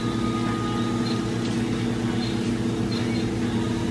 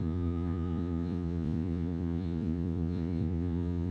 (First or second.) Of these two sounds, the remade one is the second